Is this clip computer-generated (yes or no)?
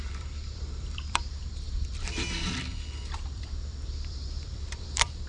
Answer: yes